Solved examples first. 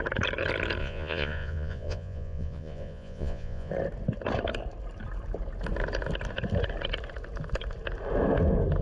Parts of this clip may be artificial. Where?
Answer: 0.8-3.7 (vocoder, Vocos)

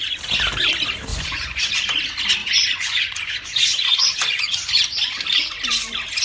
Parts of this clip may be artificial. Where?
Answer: 1.1-1.7 (vocoder, Vocos); 2.4-4.7

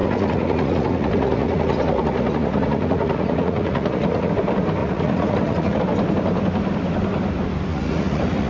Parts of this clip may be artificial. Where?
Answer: 0.0-4.3 (vocoder, Vocos); 4.8-5.8; 7.7-8.5

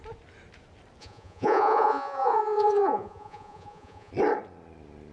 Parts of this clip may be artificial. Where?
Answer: 1.0-4.1 (vocoder, Vocos)

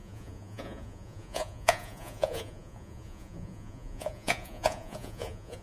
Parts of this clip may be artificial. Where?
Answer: 0.0-5.6 (vocoder, Vocos)

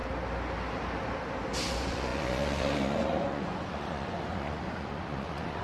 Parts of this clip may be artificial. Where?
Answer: 1.7-5.6 (vocoder, Vocos)